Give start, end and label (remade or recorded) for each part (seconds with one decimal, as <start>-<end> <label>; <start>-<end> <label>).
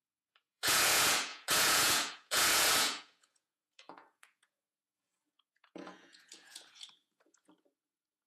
0.0-8.3 remade